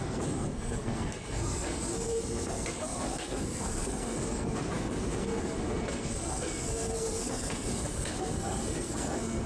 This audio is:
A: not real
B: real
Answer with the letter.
A